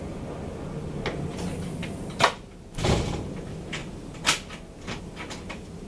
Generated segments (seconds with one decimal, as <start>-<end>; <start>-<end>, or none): none